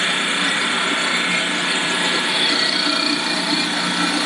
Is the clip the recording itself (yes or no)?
yes